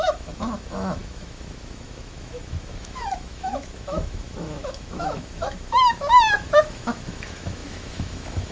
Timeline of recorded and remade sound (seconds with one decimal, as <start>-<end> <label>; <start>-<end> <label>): 0.0-8.5 remade